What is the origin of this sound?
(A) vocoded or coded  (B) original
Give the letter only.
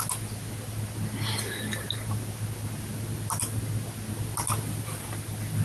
B